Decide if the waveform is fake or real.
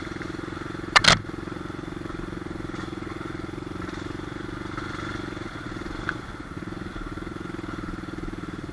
real